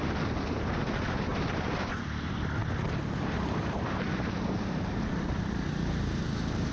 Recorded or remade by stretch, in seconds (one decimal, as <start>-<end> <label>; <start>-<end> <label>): 0.0-1.3 recorded; 1.3-1.9 remade; 1.9-2.6 recorded; 2.6-6.7 remade